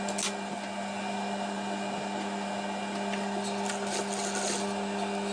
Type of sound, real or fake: real